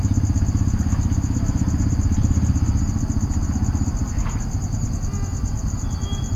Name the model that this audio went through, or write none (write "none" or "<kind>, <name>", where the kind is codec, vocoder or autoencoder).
none